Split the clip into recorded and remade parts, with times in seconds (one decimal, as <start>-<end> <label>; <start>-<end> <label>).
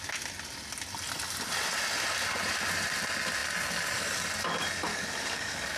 0.0-4.9 recorded; 4.9-5.8 remade